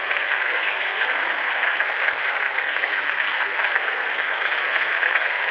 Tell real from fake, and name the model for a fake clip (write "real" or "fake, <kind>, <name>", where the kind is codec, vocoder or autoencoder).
fake, codec, SNAC